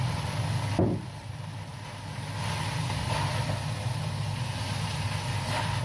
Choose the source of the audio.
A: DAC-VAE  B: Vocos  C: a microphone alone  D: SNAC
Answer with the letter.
C